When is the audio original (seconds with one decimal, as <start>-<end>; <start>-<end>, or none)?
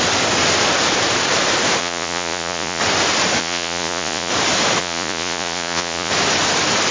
0.0-1.8; 2.8-3.4; 4.3-4.8; 6.1-6.9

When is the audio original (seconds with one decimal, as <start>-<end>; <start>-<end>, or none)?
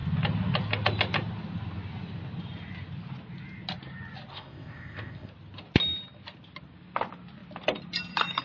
0.0-4.3; 5.3-8.4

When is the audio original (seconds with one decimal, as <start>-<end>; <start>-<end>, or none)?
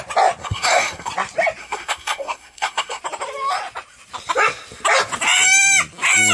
0.0-0.4; 1.1-1.6; 3.0-6.3